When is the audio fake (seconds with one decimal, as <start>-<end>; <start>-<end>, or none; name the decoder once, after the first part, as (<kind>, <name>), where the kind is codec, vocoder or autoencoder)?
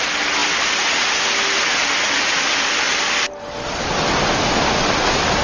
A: none